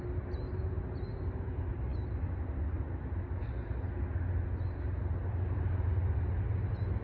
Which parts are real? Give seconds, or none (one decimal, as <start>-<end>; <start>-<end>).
0.0-7.0